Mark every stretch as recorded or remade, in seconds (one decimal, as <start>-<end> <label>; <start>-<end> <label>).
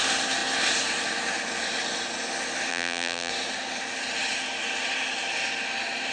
0.0-2.7 recorded; 2.7-3.3 remade; 3.3-6.1 recorded